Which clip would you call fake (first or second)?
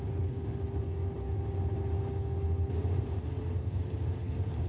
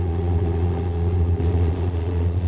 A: second